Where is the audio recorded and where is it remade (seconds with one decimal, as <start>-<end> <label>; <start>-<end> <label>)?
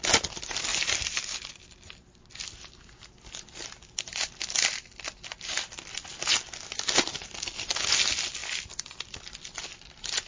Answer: 0.0-0.7 recorded; 0.7-1.6 remade; 1.6-8.4 recorded; 8.4-10.3 remade